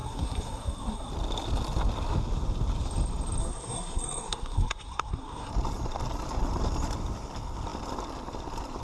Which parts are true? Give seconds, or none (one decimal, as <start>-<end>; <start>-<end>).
1.1-3.4; 5.5-8.8